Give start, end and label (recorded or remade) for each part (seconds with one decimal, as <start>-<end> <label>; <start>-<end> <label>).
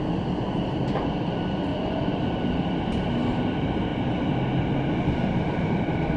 0.0-1.7 recorded; 1.7-2.2 remade; 2.2-6.2 recorded